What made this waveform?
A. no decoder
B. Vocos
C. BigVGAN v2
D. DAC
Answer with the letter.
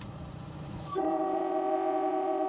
B